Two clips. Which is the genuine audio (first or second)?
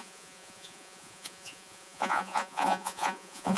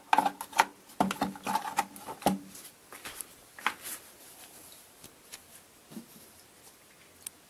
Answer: second